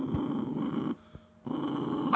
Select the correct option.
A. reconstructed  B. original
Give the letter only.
B